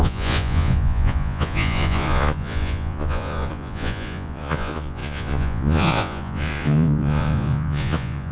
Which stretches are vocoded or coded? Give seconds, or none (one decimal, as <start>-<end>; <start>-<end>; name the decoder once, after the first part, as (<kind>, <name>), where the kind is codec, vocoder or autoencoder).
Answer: 0.0-8.3 (vocoder, Vocos)